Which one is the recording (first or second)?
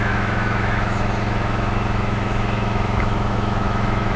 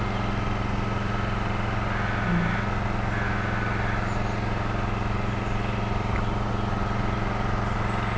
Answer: second